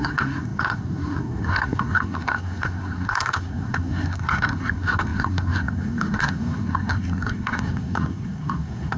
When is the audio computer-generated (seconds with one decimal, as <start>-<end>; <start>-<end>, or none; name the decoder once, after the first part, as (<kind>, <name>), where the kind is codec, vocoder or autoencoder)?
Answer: 0.0-9.0 (codec, SNAC)